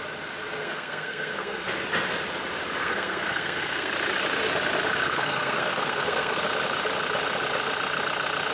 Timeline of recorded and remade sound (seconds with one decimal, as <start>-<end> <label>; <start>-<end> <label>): 0.0-0.6 recorded; 0.6-1.6 remade; 1.6-2.8 recorded; 2.8-3.9 remade; 3.9-5.0 recorded; 5.0-6.4 remade; 6.4-8.5 recorded

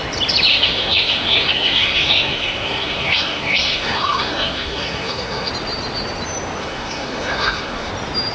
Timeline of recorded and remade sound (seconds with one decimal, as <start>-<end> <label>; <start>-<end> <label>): 0.0-0.5 recorded; 0.5-5.5 remade; 5.5-6.6 recorded; 6.6-7.9 remade; 7.9-8.3 recorded

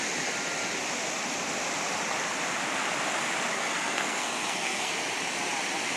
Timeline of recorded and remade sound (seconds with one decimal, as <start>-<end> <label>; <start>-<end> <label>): 0.0-3.5 recorded; 3.5-4.9 remade; 4.9-6.0 recorded

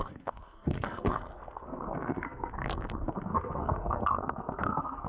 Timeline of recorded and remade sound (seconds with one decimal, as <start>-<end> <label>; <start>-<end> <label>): 0.0-5.1 remade

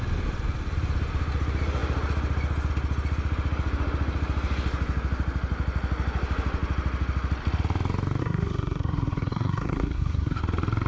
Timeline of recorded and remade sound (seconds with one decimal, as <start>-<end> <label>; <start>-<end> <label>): 0.0-8.2 recorded; 8.2-10.4 remade; 10.4-10.9 recorded

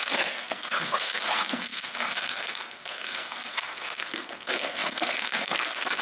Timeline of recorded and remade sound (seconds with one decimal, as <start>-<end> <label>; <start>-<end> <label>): 0.0-6.0 remade